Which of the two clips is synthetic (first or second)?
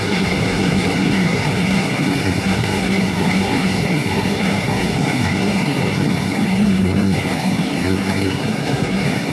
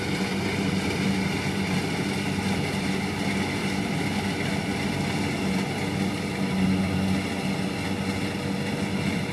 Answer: first